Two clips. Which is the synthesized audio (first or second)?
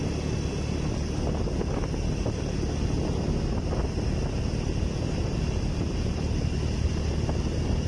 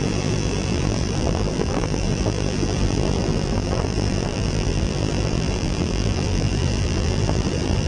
second